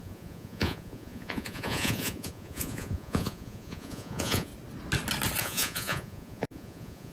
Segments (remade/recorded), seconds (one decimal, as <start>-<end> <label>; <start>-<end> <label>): 0.0-4.5 remade; 4.5-5.4 recorded; 5.4-7.1 remade